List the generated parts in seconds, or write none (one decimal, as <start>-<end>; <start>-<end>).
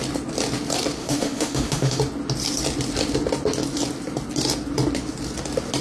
1.0-2.0